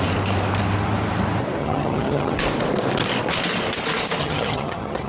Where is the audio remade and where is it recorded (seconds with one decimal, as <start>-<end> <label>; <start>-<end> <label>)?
0.0-1.6 recorded; 1.6-2.4 remade; 2.4-4.2 recorded; 4.2-5.1 remade